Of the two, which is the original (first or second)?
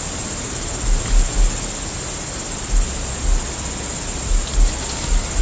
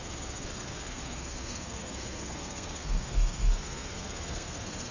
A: first